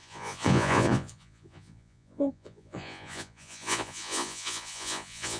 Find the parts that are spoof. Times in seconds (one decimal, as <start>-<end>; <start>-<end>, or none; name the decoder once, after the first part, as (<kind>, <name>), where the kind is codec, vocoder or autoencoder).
0.0-5.4 (vocoder, Vocos)

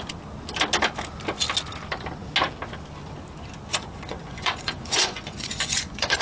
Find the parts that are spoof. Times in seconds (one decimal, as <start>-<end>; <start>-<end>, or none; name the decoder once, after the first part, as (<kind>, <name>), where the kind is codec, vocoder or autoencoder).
3.7-6.2 (vocoder, Vocos)

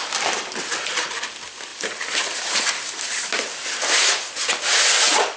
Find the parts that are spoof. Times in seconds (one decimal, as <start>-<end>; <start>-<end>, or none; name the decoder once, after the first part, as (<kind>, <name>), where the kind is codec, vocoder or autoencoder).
none

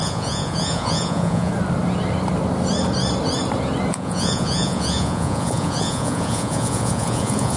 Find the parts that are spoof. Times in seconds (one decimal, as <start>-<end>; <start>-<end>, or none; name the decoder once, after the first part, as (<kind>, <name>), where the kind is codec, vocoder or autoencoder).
0.0-1.5 (vocoder, Vocos); 3.9-7.6

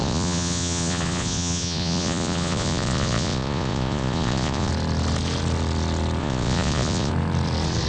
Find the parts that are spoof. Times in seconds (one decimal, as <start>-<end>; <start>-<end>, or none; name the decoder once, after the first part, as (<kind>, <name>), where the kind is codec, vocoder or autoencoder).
0.0-4.7 (vocoder, Vocos); 6.2-7.1

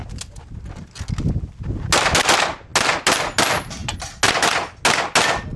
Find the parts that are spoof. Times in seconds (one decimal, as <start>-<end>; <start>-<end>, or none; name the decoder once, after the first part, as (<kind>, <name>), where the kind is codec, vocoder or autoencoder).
none

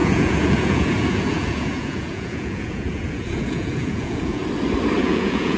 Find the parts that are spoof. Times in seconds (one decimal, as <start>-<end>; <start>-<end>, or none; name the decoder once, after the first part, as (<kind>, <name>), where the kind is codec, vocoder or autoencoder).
0.0-4.4 (vocoder, Vocos); 5.0-5.6

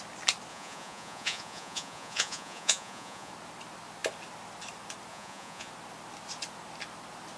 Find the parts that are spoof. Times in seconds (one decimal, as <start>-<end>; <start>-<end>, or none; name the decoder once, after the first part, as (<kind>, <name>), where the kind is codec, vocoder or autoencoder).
0.5-3.3 (vocoder, Vocos); 5.1-5.7